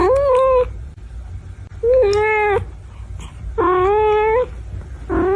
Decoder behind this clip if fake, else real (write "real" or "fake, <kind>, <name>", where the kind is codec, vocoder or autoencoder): real